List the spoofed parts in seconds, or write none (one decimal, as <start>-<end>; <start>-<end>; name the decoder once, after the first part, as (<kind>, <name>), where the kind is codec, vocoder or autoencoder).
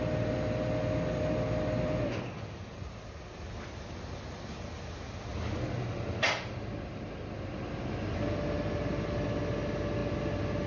none